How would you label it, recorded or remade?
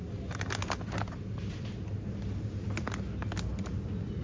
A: recorded